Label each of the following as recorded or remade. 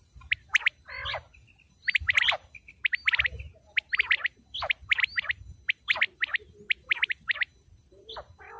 recorded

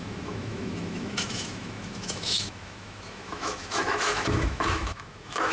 remade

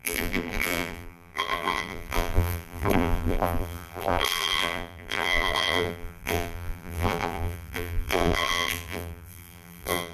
remade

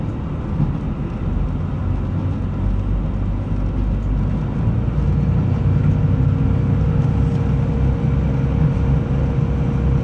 recorded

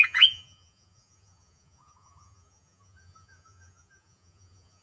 remade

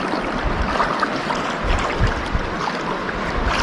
recorded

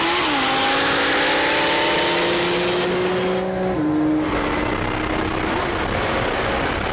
recorded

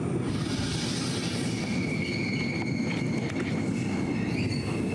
recorded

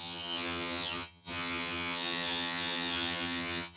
remade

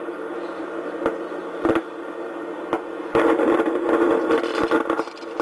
recorded